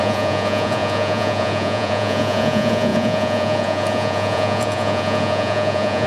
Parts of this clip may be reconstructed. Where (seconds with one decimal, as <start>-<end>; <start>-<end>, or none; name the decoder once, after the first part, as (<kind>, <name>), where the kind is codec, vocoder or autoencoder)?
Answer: 0.0-6.1 (vocoder, Vocos)